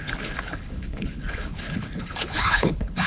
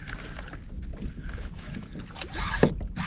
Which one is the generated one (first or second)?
first